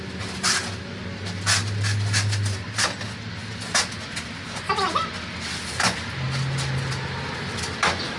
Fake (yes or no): no